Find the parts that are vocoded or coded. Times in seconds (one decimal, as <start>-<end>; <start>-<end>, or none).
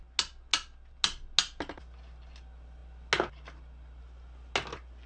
none